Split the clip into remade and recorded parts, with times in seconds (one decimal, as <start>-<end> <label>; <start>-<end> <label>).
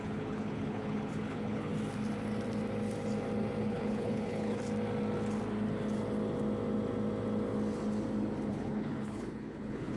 0.0-1.7 remade; 1.7-3.6 recorded; 3.6-4.6 remade; 4.6-8.5 recorded; 8.5-10.0 remade